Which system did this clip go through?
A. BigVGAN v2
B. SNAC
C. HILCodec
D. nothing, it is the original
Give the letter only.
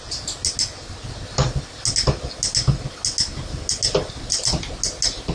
D